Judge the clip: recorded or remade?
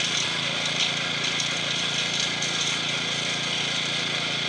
recorded